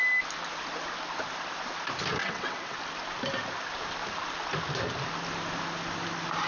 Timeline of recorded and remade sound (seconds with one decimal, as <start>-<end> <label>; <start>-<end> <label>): 0.0-2.2 recorded; 2.2-2.8 remade; 2.8-6.5 recorded